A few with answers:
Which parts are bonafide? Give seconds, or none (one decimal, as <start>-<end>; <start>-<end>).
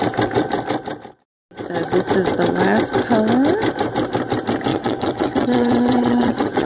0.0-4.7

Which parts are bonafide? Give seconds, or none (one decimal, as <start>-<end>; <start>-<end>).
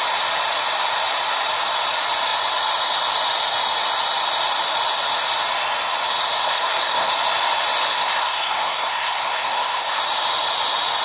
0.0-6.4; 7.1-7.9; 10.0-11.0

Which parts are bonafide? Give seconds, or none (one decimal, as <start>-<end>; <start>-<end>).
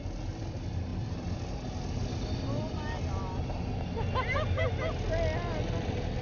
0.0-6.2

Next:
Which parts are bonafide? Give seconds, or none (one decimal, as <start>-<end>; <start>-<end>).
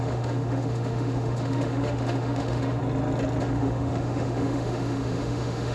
2.8-3.4